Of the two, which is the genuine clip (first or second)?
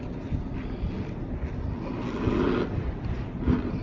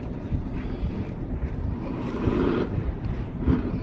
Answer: first